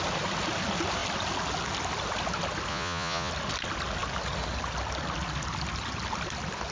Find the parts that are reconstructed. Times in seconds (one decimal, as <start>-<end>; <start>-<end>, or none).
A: 2.7-3.3